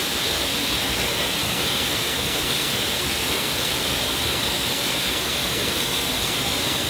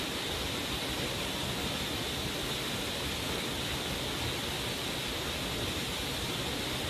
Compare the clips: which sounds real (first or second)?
second